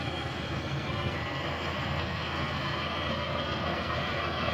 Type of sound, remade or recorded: remade